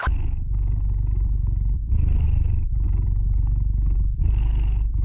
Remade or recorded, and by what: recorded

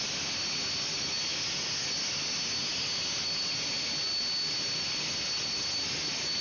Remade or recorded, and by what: recorded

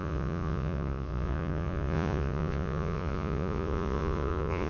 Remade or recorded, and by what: remade, vocoder, Vocos